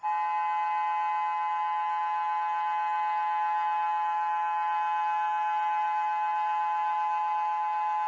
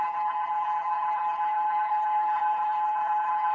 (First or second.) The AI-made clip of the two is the second